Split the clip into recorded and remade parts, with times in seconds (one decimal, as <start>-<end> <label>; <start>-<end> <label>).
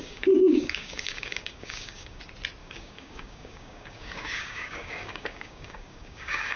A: 0.0-2.2 remade; 2.2-2.6 recorded; 2.6-6.6 remade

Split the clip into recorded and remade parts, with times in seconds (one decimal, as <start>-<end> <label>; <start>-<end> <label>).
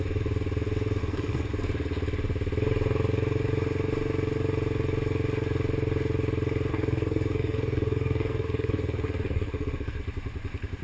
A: 0.0-1.0 recorded; 1.0-1.5 remade; 1.5-6.7 recorded; 6.7-10.0 remade; 10.0-10.8 recorded